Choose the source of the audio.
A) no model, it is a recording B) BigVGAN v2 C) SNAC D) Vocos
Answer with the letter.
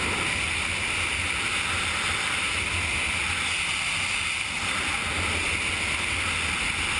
A